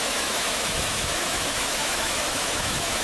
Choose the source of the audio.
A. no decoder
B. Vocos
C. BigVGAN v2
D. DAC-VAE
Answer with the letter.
D